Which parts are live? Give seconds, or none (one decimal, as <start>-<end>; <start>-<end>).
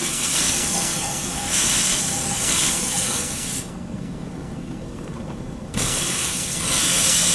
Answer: none